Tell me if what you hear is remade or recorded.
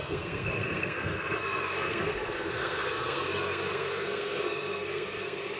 remade